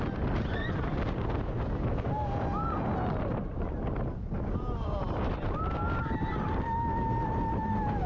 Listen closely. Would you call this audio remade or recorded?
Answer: recorded